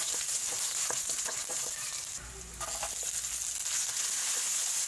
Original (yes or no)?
yes